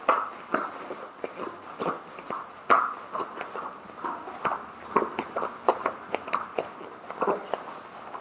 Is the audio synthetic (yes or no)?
no